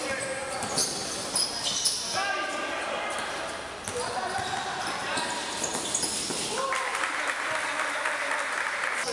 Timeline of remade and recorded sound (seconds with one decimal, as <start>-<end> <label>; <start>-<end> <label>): 0.0-9.1 recorded